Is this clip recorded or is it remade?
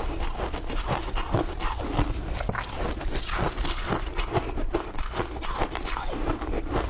recorded